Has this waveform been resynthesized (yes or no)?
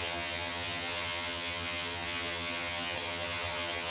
yes